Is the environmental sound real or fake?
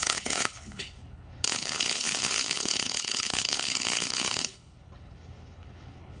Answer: fake